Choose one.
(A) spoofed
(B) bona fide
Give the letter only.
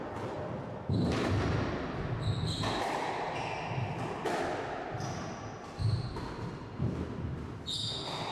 B